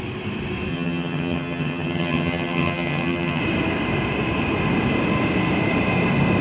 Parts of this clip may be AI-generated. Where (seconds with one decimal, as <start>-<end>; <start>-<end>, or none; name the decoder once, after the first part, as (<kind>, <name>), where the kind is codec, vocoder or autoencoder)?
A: 0.7-3.4 (vocoder, HiFi-GAN)